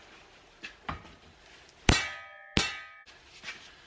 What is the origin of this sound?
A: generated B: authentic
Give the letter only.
B